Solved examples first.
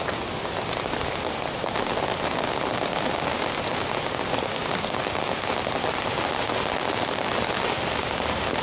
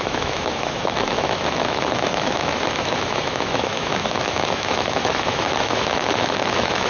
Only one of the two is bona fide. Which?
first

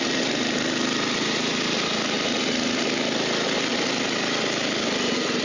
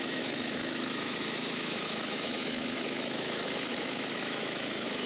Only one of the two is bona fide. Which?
first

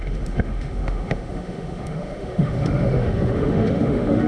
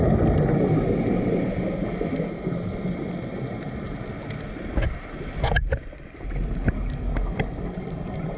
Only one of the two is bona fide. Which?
second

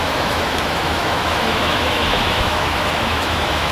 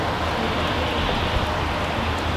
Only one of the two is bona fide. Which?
second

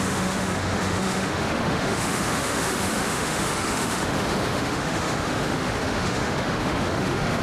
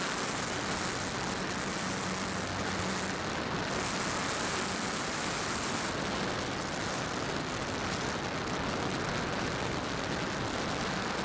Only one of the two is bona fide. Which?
second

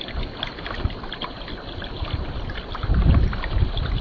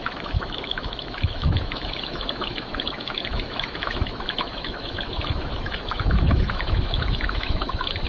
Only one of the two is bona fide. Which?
first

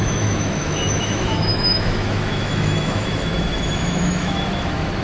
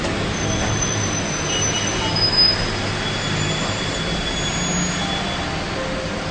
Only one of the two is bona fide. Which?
second